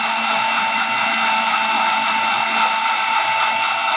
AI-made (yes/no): no